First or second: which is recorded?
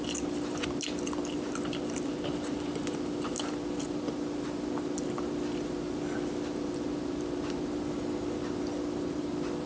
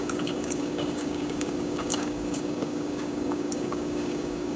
first